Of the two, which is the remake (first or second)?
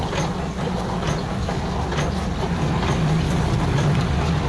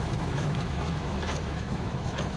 second